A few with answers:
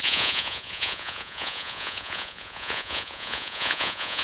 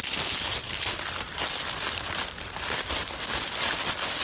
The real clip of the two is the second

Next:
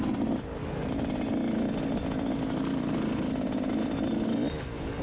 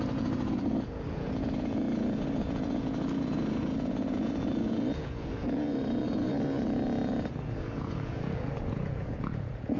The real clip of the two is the first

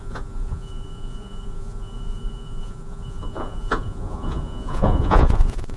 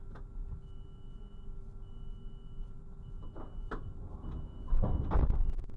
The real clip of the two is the second